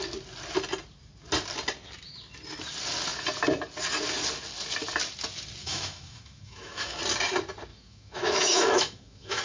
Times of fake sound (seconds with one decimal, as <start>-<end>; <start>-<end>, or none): 5.6-7.0; 7.7-9.4